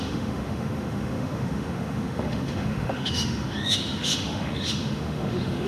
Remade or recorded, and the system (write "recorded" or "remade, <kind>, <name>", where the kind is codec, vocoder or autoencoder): remade, autoencoder, DAC-VAE